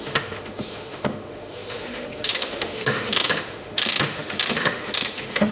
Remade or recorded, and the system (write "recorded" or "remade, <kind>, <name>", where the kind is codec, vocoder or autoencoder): remade, autoencoder, DAC-VAE